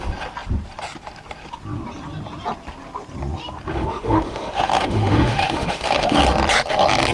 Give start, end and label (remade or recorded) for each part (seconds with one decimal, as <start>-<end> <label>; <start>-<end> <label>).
0.0-3.7 recorded; 3.7-6.2 remade; 6.2-7.1 recorded